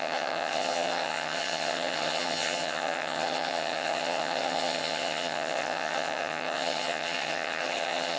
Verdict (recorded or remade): remade